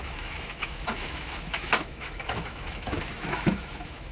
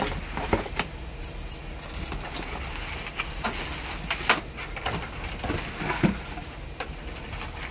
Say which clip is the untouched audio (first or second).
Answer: second